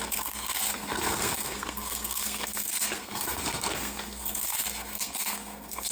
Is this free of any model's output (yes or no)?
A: no